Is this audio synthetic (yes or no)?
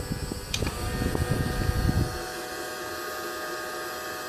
no